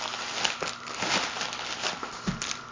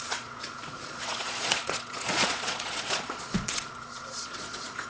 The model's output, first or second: second